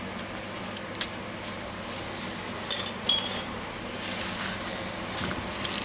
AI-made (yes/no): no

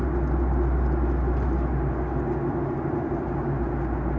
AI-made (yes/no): no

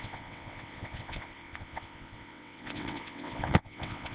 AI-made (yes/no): yes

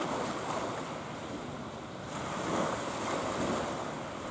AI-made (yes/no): no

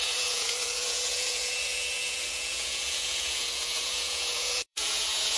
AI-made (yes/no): yes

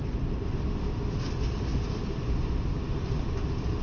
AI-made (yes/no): no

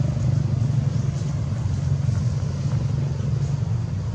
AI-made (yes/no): no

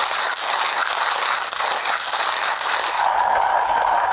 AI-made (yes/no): no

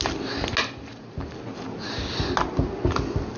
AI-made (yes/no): no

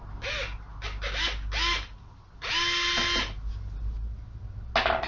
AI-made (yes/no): no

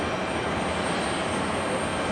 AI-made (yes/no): no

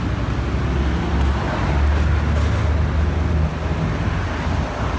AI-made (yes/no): no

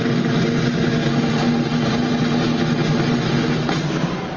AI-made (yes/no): no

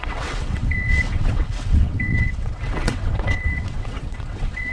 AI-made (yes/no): yes